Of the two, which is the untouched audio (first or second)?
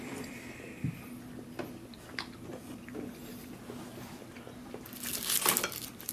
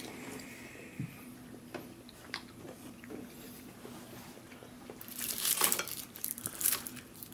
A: first